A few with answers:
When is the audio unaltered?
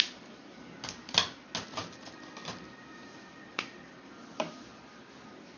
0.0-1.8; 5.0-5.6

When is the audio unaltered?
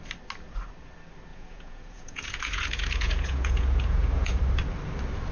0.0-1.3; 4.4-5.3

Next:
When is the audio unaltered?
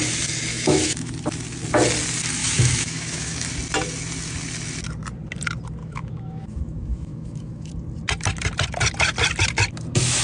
0.0-0.5; 1.1-2.4; 3.5-5.8; 7.7-10.2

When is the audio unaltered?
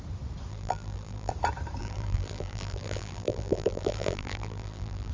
0.0-0.5; 1.3-1.8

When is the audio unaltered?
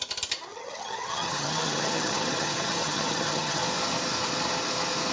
0.0-0.5; 3.6-5.1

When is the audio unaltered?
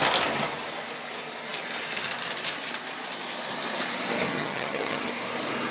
0.0-4.3; 5.1-5.7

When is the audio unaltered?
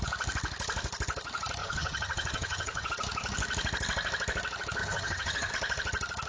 0.0-1.6; 2.9-4.8; 5.5-6.3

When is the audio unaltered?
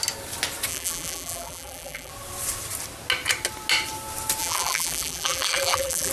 0.0-0.7; 2.1-4.4